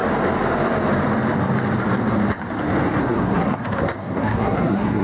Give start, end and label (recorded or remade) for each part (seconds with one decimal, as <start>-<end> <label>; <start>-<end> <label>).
0.0-3.0 recorded; 3.0-5.0 remade